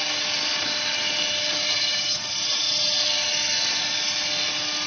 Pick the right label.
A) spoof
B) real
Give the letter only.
B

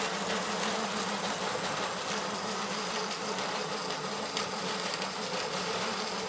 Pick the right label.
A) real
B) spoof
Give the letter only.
A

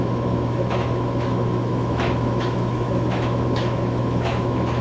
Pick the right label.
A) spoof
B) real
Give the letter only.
A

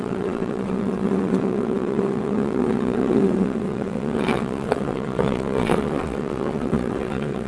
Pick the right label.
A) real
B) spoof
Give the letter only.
B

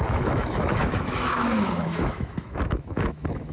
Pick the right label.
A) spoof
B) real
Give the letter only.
A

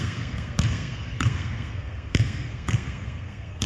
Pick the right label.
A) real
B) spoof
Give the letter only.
B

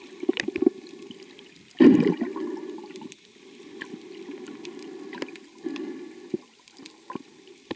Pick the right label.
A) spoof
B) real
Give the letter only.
B